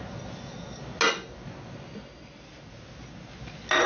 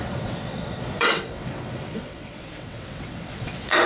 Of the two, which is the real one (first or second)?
first